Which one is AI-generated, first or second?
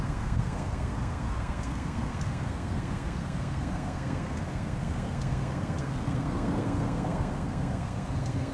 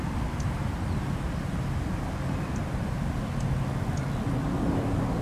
first